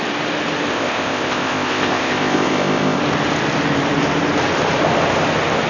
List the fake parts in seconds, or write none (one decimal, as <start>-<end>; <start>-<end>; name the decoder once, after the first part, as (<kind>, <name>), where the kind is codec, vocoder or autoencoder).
0.7-3.0 (codec, ZipCodec)